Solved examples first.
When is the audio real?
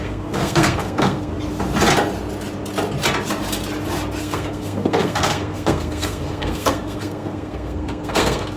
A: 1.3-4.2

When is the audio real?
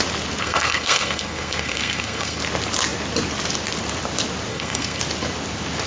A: 0.0-0.4; 2.4-4.5; 5.0-5.9